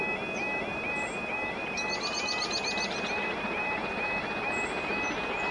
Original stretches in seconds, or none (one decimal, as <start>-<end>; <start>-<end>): 0.0-0.7; 4.0-5.5